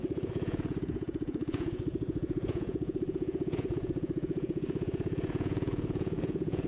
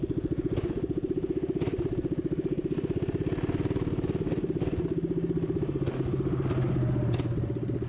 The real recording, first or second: second